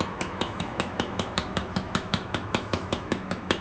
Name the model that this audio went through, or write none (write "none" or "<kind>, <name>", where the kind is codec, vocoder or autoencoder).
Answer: autoencoder, DAC-VAE